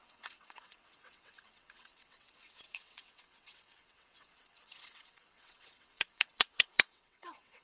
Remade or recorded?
remade